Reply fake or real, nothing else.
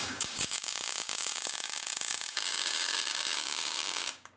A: fake